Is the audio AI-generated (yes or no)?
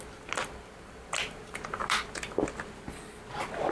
no